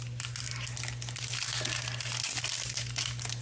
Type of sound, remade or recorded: recorded